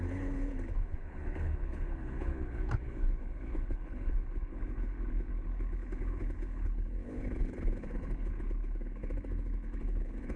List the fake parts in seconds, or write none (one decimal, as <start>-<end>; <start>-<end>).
0.0-10.4